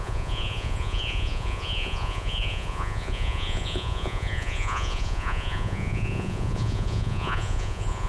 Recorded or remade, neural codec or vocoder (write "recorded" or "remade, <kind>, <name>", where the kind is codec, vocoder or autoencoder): remade, vocoder, Vocos